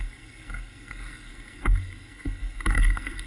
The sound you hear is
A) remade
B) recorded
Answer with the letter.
A